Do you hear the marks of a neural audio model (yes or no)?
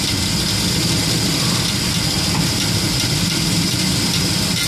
no